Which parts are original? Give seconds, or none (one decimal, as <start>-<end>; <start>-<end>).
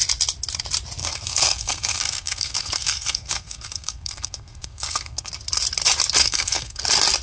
0.0-1.0; 5.3-6.2; 6.8-7.2